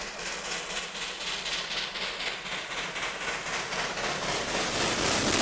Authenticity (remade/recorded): recorded